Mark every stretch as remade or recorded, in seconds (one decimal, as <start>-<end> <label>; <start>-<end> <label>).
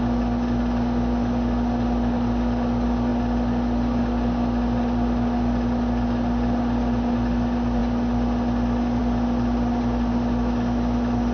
0.0-11.3 recorded